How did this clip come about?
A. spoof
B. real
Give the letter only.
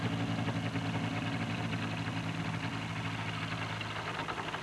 B